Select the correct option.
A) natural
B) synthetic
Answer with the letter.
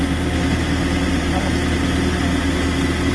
A